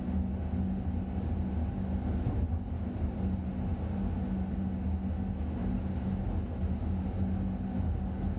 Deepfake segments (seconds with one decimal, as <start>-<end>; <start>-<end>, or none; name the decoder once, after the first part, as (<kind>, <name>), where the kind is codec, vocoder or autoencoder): none